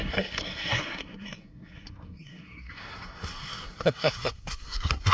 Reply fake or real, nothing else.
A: fake